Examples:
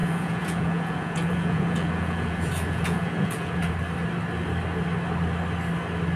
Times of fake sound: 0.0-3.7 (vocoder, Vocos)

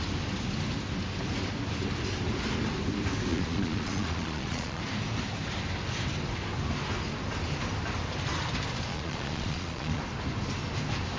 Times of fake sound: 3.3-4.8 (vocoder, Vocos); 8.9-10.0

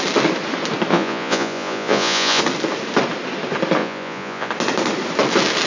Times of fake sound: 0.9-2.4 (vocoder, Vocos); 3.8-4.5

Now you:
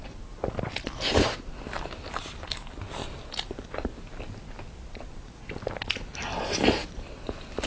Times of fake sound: none

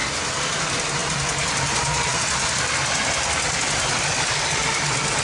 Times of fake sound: none

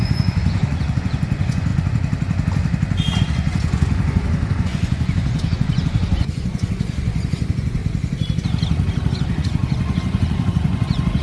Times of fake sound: 0.0-1.7 (vocoder, Vocos); 3.2-7.8; 9.1-11.2

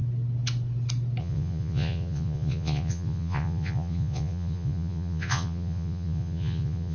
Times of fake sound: 1.2-6.9 (vocoder, Vocos)